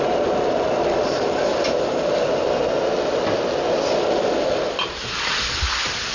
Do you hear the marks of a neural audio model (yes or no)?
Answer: no